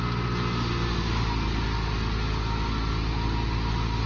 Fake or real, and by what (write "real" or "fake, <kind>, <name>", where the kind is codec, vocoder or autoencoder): real